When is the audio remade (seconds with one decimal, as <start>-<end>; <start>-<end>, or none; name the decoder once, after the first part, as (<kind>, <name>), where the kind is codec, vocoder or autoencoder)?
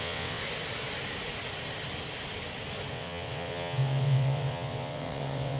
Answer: 0.0-0.4 (vocoder, WaveNeXt); 2.9-5.6